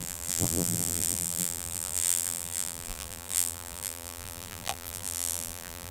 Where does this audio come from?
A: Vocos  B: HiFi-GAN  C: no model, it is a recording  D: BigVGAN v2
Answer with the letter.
D